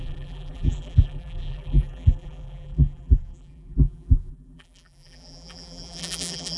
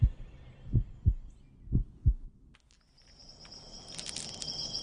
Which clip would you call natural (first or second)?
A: second